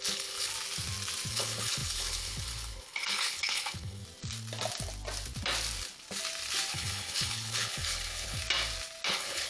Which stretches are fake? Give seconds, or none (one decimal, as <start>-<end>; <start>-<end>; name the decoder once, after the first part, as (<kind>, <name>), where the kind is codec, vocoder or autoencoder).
0.0-0.5 (codec, HILCodec); 1.3-4.0; 6.7-8.4; 9.1-9.5